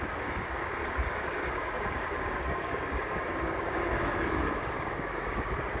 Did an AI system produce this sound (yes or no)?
yes